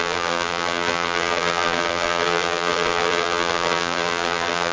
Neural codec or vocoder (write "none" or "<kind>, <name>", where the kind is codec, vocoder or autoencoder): vocoder, BigVGAN v2